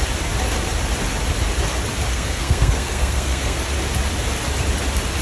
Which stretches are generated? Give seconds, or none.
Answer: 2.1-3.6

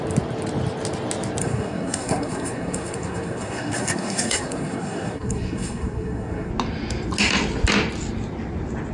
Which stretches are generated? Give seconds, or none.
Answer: 1.4-6.5